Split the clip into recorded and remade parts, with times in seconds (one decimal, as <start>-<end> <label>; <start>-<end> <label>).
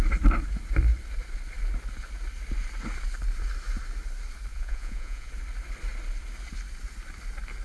0.0-4.5 recorded; 4.5-5.3 remade; 5.3-7.6 recorded